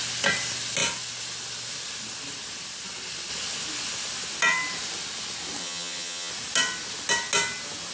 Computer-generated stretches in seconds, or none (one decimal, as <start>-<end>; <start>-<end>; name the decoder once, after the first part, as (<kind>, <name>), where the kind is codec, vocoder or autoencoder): 5.6-6.3 (vocoder, HiFi-GAN)